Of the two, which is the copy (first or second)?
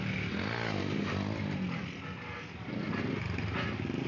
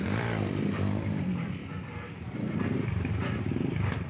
second